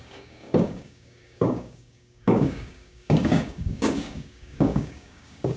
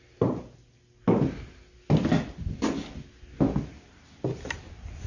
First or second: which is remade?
first